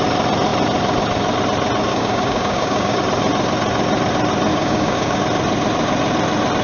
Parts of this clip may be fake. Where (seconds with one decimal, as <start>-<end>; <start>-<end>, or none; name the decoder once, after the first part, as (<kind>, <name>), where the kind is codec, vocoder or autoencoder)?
1.9-3.0 (codec, DAC); 4.5-5.2